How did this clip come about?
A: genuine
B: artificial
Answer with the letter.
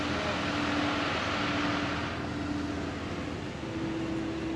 A